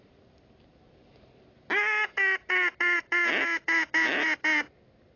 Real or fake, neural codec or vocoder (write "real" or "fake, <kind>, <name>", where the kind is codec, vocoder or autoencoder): real